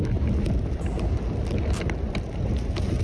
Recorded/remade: recorded